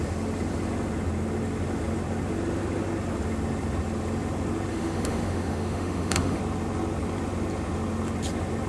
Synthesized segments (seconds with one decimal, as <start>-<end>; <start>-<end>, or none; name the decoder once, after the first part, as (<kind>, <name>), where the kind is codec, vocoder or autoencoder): 4.7-6.4 (autoencoder, DAC-VAE)